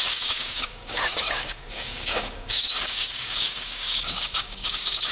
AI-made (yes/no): yes